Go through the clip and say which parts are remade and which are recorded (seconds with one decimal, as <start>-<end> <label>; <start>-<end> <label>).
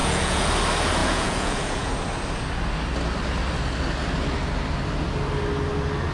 0.0-0.5 remade; 0.5-1.0 recorded; 1.0-1.9 remade; 1.9-6.1 recorded